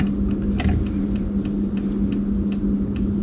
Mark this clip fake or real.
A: real